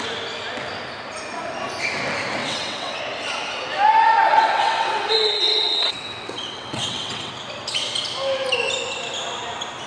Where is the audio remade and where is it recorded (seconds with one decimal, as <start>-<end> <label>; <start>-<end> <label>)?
0.0-2.4 recorded; 2.4-3.0 remade; 3.0-4.3 recorded; 4.3-7.3 remade; 7.3-9.9 recorded